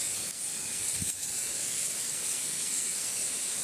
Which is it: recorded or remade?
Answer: remade